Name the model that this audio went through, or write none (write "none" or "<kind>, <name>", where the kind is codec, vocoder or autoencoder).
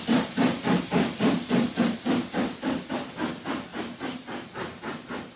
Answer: none